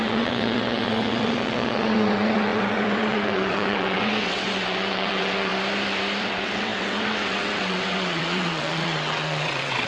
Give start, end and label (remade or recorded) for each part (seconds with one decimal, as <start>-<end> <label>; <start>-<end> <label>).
0.0-5.5 remade; 5.5-6.2 recorded; 6.2-9.9 remade